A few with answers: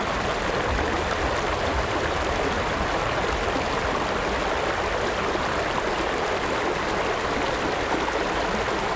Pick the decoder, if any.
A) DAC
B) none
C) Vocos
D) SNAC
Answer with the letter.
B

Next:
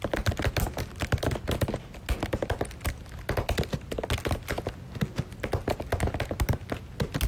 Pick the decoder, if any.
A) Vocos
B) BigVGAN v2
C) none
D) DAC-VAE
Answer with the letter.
C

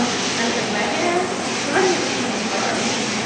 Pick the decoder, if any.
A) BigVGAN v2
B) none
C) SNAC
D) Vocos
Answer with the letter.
B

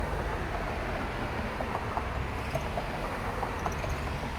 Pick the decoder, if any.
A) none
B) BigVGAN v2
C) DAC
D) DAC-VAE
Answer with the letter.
A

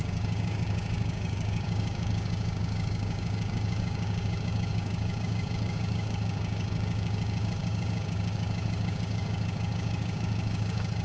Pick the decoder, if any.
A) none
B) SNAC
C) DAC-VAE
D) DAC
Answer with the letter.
D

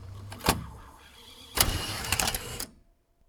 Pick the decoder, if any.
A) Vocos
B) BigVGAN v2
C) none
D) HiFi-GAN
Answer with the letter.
B